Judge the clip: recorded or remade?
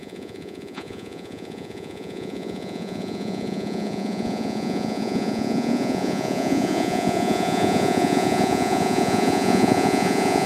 remade